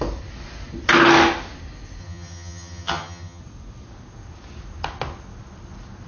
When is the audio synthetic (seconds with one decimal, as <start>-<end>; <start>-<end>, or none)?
2.0-3.4